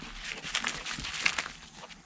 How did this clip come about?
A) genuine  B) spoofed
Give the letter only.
A